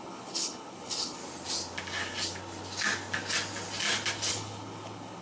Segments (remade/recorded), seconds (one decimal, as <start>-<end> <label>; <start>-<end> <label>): 0.0-1.2 remade; 1.2-4.3 recorded; 4.3-5.2 remade